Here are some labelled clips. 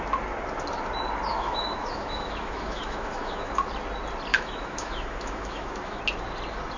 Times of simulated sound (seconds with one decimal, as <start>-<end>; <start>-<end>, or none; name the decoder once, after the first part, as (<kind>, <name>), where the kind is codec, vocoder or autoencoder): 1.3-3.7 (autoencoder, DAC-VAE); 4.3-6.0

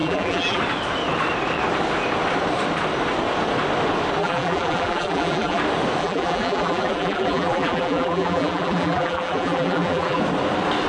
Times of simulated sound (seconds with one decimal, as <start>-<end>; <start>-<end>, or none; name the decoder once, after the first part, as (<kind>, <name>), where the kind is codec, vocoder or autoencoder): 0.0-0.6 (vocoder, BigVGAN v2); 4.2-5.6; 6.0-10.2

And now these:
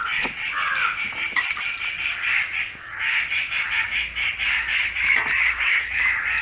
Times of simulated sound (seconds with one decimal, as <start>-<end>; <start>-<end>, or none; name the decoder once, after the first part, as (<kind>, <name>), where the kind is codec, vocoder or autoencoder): 5.4-5.9 (codec, SNAC)